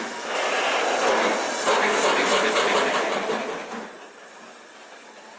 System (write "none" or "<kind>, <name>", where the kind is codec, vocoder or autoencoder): none